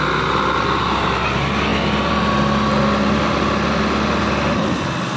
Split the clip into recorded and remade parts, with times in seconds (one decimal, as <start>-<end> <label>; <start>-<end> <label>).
0.0-5.2 recorded